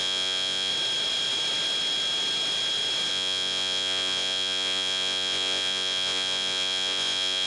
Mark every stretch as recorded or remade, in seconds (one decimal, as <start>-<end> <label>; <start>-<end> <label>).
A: 0.0-0.7 remade; 0.7-3.1 recorded; 3.1-7.5 remade